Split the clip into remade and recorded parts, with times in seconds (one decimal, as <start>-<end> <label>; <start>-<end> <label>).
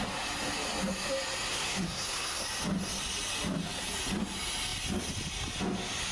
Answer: 0.0-1.5 recorded; 1.5-2.4 remade; 2.4-6.1 recorded